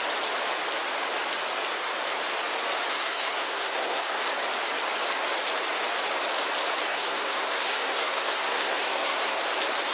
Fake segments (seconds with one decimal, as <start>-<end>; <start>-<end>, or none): 2.9-4.2; 6.9-9.4